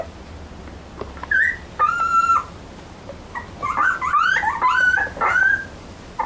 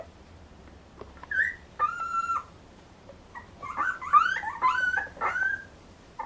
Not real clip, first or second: second